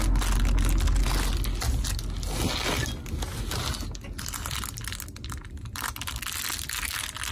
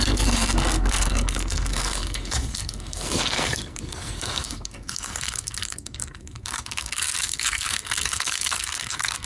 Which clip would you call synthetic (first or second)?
second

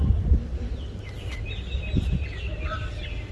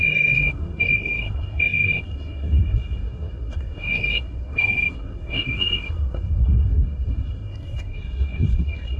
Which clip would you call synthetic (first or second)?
second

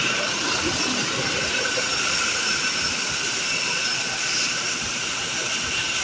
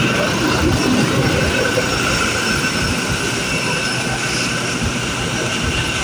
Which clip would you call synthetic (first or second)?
first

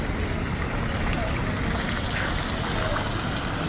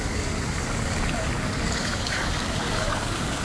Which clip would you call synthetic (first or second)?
second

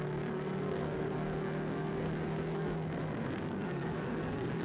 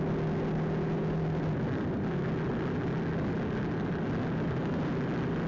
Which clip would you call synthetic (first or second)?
first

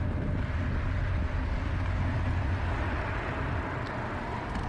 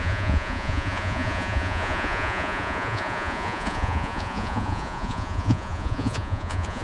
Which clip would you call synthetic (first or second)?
second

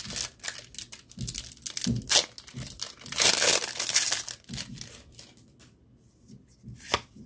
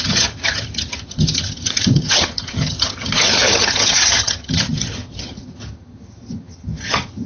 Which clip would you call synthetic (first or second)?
second